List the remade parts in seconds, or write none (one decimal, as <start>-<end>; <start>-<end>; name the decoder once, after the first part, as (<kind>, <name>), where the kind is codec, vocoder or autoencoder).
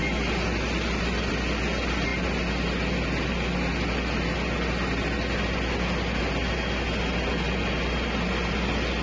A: none